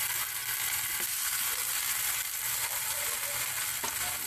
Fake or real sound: real